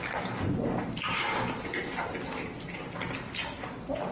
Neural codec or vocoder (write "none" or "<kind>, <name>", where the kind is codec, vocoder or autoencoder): none